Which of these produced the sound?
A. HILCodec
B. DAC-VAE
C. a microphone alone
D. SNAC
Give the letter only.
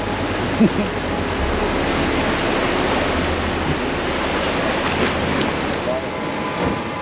C